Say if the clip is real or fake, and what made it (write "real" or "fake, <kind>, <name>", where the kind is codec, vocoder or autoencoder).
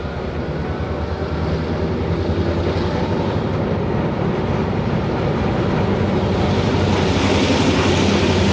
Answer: real